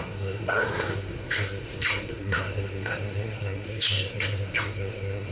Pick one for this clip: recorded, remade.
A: remade